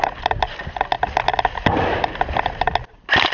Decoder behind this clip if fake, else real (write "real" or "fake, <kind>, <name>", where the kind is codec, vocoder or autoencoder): real